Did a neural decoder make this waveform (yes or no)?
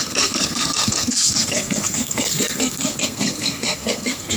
yes